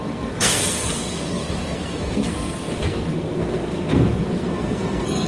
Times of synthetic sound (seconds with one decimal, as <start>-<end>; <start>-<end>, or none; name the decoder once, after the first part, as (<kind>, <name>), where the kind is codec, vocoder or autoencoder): 0.0-5.3 (codec, SNAC)